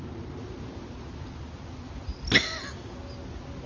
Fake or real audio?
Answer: real